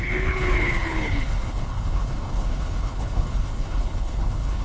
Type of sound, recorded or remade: remade